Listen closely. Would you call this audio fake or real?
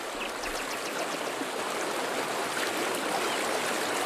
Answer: real